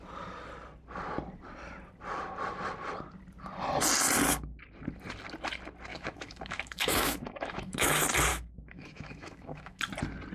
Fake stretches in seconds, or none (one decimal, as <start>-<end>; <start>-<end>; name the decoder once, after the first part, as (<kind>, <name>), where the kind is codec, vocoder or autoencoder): 5.9-7.9 (autoencoder, DAC-VAE); 8.3-9.8